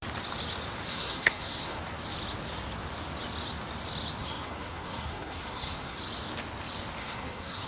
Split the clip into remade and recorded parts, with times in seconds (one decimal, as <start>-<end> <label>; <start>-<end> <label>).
0.0-0.9 recorded; 0.9-1.8 remade; 1.8-4.2 recorded; 4.2-6.0 remade; 6.0-7.0 recorded; 7.0-7.7 remade